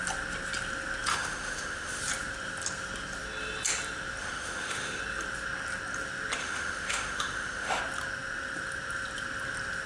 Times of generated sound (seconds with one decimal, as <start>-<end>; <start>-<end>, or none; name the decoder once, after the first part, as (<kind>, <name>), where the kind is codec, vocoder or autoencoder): 1.1-2.0 (autoencoder, DAC-VAE); 4.2-5.0; 6.4-7.8